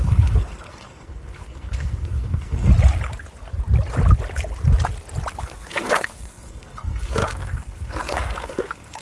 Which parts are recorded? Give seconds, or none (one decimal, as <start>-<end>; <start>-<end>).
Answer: 2.7-5.4